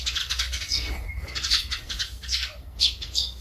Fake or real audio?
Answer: fake